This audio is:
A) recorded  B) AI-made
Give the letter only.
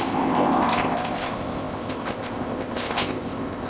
B